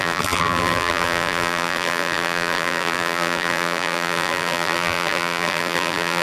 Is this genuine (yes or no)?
no